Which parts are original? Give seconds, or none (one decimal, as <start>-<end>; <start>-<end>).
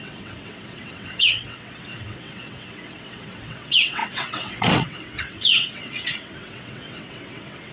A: none